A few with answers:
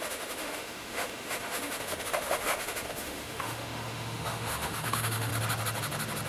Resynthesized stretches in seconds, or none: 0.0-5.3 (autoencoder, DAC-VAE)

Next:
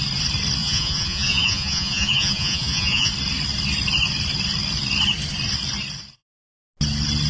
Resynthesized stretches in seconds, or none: 0.6-3.1 (vocoder, Vocos)

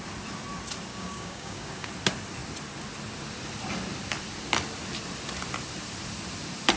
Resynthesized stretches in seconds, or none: 0.9-1.9 (codec, DAC)

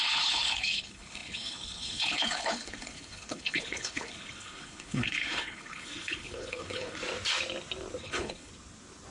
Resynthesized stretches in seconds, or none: 0.0-7.0 (codec, HILCodec); 8.0-8.5

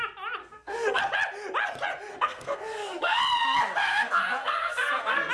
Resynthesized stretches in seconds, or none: 0.4-1.0 (codec, SNAC); 2.1-3.2; 3.8-5.3

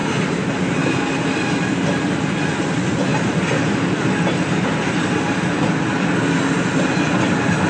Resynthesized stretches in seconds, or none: 0.0-0.5 (vocoder, BigVGAN v2)

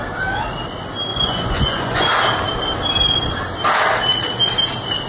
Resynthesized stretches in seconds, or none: 1.1-2.1 (vocoder, Vocos)